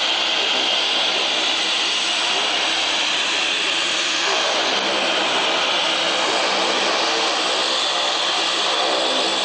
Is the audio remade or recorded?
recorded